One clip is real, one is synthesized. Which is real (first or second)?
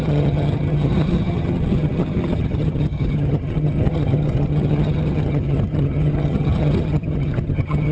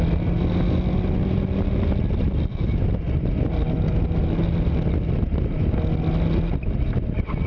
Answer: second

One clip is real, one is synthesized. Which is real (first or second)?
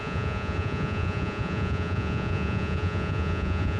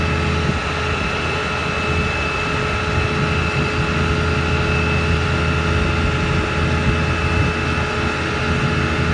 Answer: second